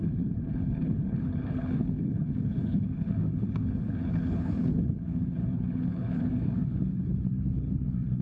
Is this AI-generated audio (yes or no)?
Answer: yes